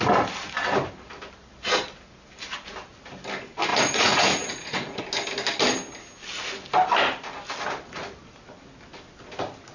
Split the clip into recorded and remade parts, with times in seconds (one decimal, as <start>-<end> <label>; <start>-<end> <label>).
0.0-3.7 recorded; 3.7-5.0 remade; 5.0-9.7 recorded